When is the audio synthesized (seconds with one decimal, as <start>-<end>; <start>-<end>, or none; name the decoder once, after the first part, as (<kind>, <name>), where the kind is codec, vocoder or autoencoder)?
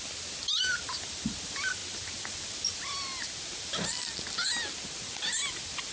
none